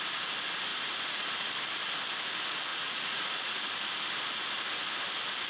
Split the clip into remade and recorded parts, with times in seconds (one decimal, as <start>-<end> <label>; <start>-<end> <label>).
0.0-0.7 recorded; 0.7-1.3 remade; 1.3-2.7 recorded; 2.7-3.6 remade; 3.6-5.5 recorded